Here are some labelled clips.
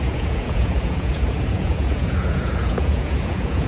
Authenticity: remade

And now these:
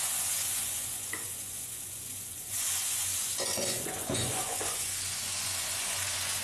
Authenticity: remade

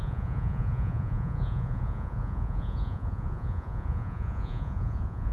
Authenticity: remade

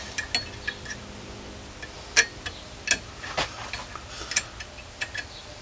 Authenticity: recorded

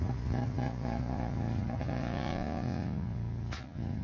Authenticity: remade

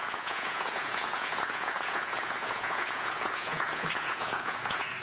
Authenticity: remade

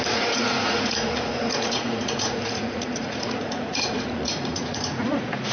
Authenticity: remade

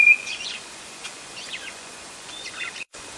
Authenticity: remade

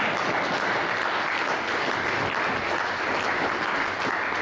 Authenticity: recorded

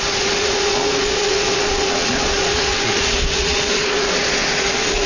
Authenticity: remade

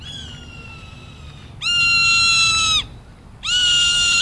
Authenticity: recorded